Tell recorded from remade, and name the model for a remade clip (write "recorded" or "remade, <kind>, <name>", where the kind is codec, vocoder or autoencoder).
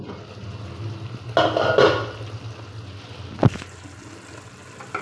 recorded